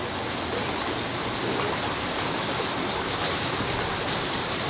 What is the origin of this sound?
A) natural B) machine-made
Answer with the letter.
A